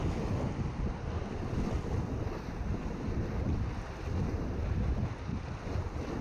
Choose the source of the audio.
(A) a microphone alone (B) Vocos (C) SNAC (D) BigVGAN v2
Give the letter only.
A